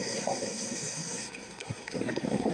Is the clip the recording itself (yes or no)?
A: no